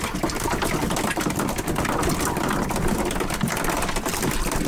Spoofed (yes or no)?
no